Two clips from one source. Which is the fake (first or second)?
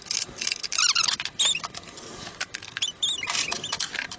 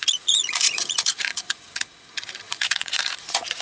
second